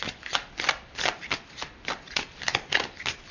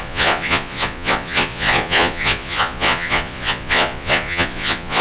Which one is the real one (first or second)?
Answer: first